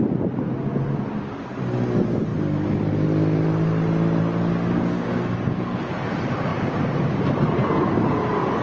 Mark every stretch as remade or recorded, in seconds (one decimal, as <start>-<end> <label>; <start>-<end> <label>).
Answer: 0.0-4.8 recorded; 4.8-5.8 remade; 5.8-8.6 recorded